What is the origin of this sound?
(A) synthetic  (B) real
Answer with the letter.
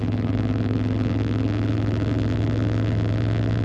A